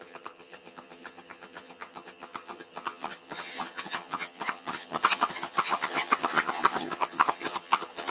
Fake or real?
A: fake